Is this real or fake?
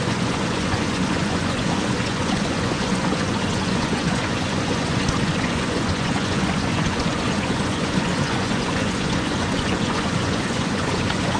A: fake